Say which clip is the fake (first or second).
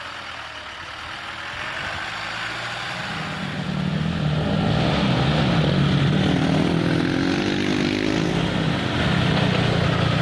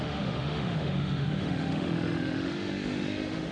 second